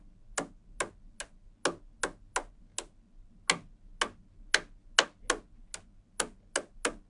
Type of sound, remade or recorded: recorded